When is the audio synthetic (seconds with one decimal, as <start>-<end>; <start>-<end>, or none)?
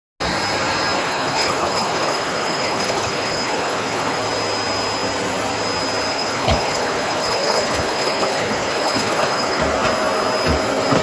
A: 1.0-4.2; 6.1-9.6